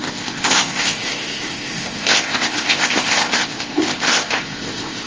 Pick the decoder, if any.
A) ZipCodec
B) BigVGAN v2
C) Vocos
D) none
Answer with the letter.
A